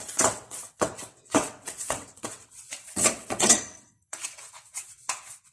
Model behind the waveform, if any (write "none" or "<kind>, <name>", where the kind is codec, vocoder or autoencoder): vocoder, WaveNeXt